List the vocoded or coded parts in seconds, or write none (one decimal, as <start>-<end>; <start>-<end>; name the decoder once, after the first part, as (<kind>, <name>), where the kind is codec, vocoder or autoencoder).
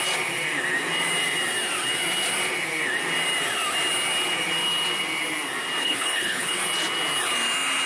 5.8-6.6 (codec, HILCodec)